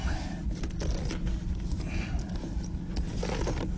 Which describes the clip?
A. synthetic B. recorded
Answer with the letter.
B